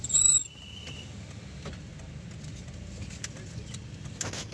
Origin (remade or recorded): recorded